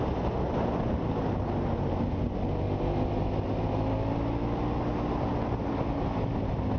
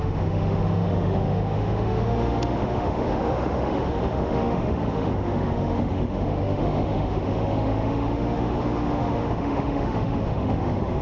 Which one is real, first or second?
first